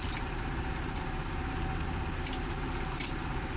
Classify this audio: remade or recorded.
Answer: remade